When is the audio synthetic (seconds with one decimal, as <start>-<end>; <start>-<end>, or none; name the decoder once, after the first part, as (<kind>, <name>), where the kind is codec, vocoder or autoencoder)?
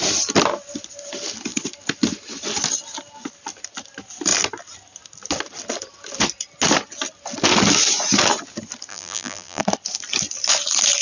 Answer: 8.9-9.6 (vocoder, BigVGAN v2)